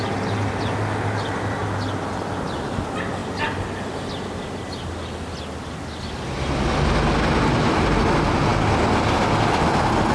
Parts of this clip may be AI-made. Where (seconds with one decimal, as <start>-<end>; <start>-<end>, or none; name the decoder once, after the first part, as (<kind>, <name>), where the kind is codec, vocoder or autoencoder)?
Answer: none